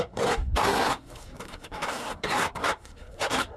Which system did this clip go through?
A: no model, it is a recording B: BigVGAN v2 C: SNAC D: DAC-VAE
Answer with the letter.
C